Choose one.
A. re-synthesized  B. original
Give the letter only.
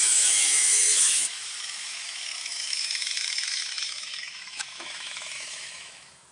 A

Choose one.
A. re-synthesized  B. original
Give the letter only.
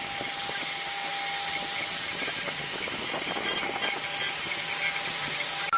B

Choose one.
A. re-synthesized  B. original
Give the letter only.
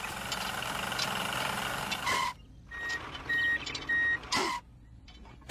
B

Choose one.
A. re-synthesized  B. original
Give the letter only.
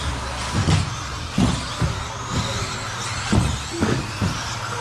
B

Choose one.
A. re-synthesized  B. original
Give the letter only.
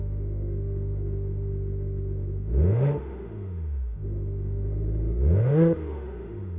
A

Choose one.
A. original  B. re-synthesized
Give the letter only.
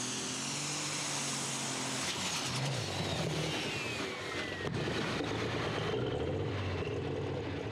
A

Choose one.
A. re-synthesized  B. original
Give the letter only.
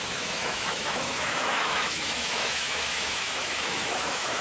A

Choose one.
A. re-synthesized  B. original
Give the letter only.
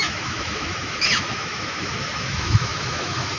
A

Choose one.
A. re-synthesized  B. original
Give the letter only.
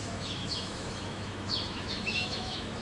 A